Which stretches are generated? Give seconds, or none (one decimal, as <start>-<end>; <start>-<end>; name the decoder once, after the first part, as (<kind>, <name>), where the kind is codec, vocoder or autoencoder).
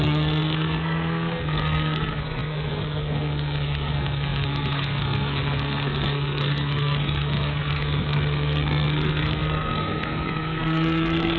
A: 0.0-11.4 (codec, SNAC)